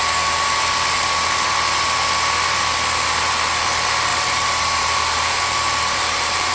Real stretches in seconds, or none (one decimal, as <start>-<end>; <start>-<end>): 0.0-4.1